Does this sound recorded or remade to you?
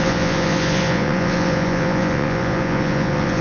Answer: remade